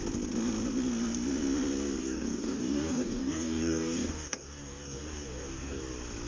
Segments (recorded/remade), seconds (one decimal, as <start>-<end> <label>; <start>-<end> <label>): 0.0-2.0 recorded; 2.0-5.8 remade; 5.8-6.3 recorded